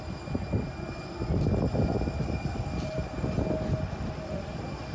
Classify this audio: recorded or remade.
recorded